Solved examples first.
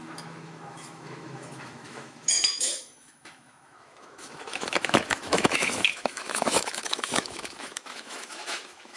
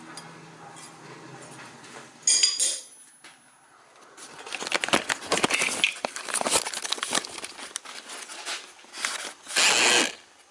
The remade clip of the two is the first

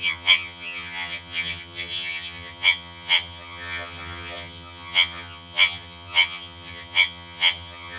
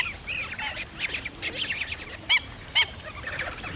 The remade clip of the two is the first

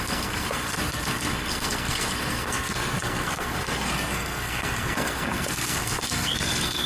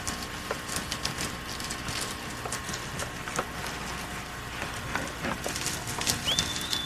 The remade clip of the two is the first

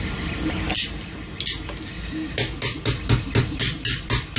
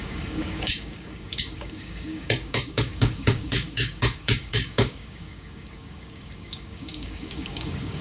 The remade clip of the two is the second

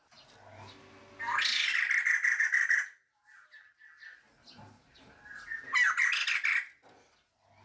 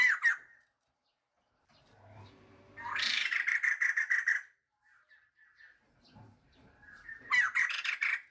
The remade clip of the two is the second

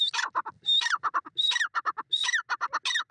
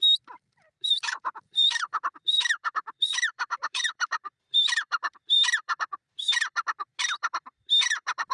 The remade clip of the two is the second